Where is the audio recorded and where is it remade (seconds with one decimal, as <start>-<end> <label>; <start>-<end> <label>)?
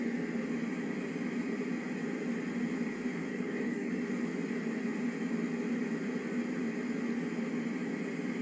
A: 0.0-3.3 recorded; 3.3-3.9 remade; 3.9-8.4 recorded